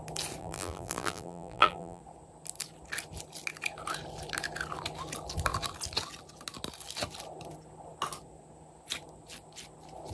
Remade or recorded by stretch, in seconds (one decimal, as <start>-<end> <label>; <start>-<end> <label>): 0.0-0.4 recorded; 0.4-2.0 remade; 2.0-10.1 recorded